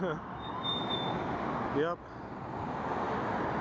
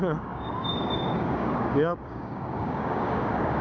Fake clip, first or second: second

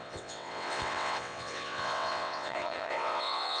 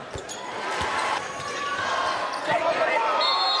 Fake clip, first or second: first